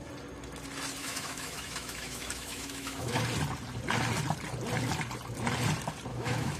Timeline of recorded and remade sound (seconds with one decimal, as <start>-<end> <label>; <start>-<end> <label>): 0.0-1.0 recorded; 1.0-3.2 remade; 3.2-6.1 recorded; 6.1-6.6 remade